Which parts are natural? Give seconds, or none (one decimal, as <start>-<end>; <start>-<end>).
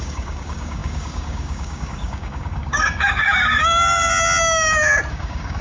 4.1-5.1